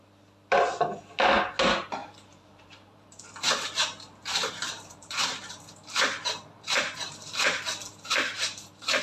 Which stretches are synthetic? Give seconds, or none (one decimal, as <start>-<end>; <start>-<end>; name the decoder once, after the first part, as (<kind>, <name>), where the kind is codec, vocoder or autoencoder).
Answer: 2.0-7.1 (vocoder, BigVGAN v2); 7.9-9.0